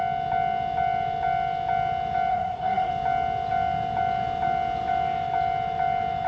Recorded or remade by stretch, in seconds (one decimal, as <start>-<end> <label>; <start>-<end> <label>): 0.0-2.3 recorded; 2.3-2.9 remade; 2.9-6.3 recorded